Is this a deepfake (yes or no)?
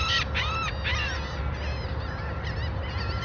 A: no